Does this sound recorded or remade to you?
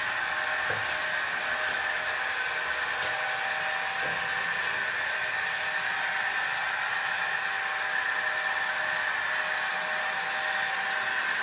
recorded